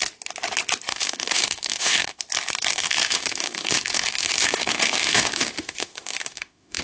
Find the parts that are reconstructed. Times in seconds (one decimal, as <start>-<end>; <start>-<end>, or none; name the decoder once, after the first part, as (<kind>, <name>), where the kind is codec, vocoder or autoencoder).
0.9-2.2 (autoencoder, DAC-VAE); 2.7-6.8